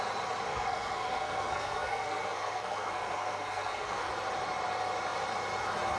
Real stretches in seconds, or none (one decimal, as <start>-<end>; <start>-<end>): 0.0-0.5; 4.1-6.0